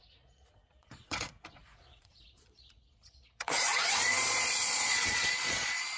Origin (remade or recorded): remade